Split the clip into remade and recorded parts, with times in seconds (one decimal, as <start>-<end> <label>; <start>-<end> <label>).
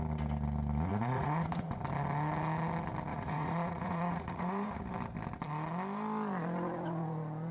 0.0-0.9 recorded; 0.9-1.7 remade; 1.7-3.1 recorded; 3.1-4.8 remade; 4.8-7.5 recorded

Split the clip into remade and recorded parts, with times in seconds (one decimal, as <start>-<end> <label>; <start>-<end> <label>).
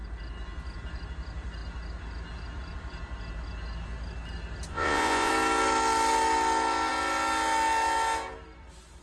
0.0-4.7 recorded; 4.7-5.3 remade; 5.3-9.0 recorded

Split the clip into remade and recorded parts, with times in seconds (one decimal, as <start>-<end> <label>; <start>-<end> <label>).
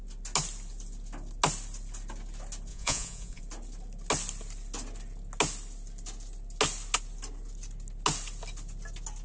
0.0-2.7 recorded; 2.7-3.4 remade; 3.4-9.2 recorded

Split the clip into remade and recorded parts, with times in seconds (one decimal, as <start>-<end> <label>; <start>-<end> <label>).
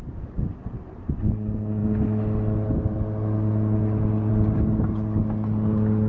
0.0-6.1 recorded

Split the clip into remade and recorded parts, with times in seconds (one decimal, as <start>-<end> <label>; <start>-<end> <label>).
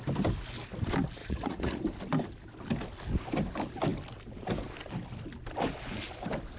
0.0-1.2 recorded; 1.2-1.8 remade; 1.8-6.6 recorded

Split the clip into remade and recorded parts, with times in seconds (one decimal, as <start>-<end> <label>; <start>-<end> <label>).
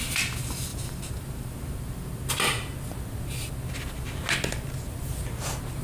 0.0-5.8 recorded